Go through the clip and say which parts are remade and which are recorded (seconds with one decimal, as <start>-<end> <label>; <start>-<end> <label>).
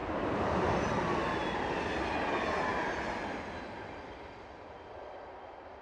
0.0-5.8 recorded